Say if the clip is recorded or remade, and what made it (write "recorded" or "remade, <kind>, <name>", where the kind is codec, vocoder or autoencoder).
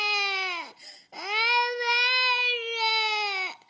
recorded